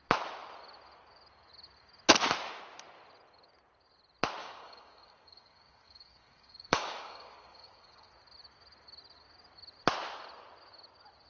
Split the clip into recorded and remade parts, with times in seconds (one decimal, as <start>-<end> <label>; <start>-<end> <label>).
0.0-4.4 recorded; 4.4-8.1 remade; 8.1-11.3 recorded